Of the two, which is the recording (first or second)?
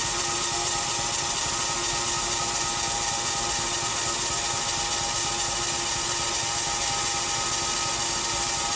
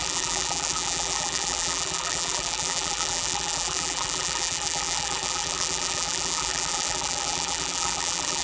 first